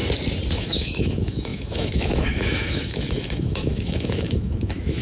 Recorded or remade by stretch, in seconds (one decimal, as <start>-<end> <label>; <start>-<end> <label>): 0.0-0.5 recorded; 0.5-5.0 remade

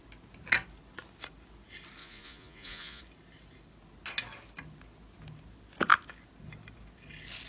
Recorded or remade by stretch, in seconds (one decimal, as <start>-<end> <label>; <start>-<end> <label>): 0.0-2.0 recorded; 2.0-3.0 remade; 3.0-7.5 recorded

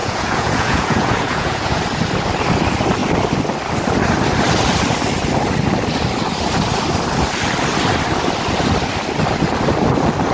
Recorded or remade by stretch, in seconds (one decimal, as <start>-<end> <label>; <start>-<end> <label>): 0.0-1.8 remade; 1.8-10.3 recorded

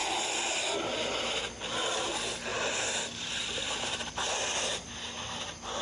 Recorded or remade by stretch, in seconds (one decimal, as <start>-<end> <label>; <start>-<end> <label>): 0.0-2.5 recorded; 2.5-4.1 remade; 4.1-5.8 recorded

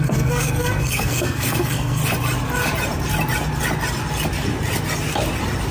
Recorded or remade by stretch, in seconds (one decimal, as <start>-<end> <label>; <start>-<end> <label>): 0.0-2.0 remade; 2.0-5.7 recorded

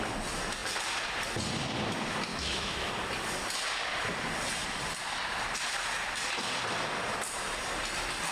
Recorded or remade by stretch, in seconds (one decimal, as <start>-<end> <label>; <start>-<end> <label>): 0.0-2.3 recorded; 2.3-2.9 remade; 2.9-8.3 recorded

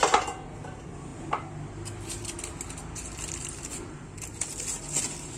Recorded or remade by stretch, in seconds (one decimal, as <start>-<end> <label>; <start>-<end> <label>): 0.0-2.8 recorded; 2.8-5.4 remade

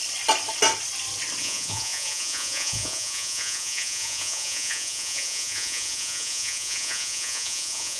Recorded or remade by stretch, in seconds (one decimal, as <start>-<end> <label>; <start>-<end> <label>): 0.0-1.4 recorded; 1.4-8.0 remade